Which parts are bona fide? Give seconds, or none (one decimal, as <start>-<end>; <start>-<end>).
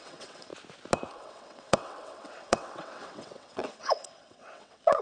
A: 0.5-1.1